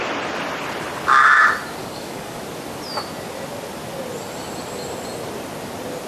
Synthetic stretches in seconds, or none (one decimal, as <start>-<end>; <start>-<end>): 1.8-2.4

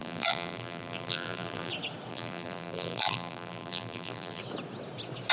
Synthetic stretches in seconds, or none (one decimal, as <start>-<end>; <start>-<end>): 0.0-1.7; 2.1-4.4

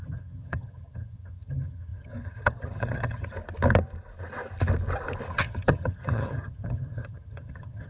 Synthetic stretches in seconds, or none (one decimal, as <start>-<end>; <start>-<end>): 0.0-3.3; 5.3-7.9

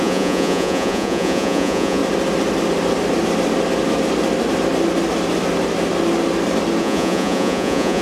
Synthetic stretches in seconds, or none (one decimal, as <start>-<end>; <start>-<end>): 0.0-2.0; 6.8-8.0

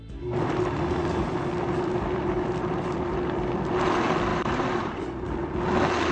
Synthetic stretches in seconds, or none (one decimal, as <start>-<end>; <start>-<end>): 4.3-5.0

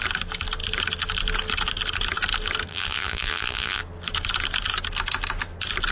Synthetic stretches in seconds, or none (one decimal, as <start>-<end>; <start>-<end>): 2.7-3.8